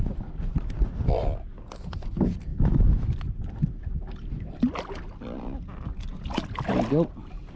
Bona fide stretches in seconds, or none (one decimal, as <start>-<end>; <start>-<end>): 0.0-7.6